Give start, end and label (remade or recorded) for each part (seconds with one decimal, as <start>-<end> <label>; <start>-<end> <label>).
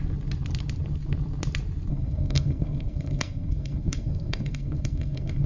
0.0-1.9 recorded; 1.9-5.5 remade